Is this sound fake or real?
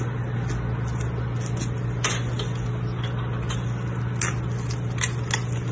real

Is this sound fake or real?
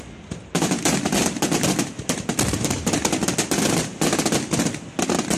real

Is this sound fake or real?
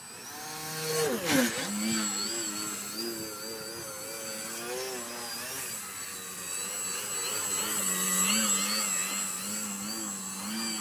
real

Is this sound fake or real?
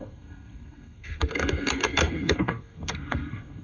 fake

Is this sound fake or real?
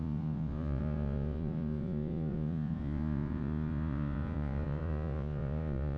fake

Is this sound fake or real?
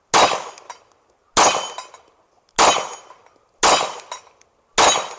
real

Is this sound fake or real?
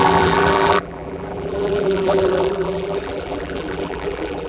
fake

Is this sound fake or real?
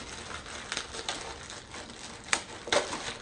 real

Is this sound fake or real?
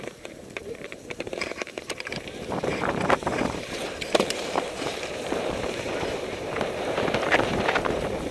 fake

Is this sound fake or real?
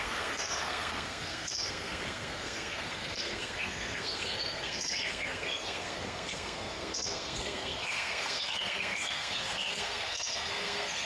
fake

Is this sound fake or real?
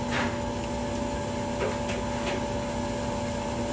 real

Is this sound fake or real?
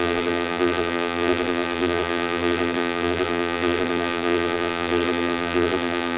fake